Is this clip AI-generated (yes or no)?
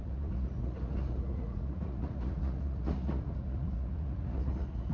yes